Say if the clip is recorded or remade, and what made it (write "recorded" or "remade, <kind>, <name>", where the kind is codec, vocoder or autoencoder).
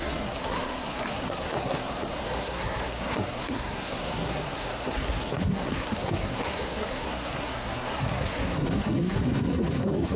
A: remade, codec, SNAC